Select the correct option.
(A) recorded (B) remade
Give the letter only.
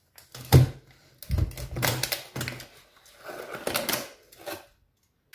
A